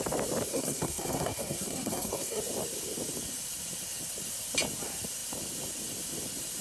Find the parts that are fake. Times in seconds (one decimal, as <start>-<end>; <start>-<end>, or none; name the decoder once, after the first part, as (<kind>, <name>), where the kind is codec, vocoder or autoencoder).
0.5-2.4 (codec, SNAC)